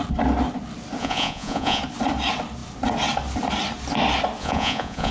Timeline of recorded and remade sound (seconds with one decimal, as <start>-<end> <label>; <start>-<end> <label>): 0.0-1.0 recorded; 1.0-1.8 remade; 1.8-4.4 recorded; 4.4-5.1 remade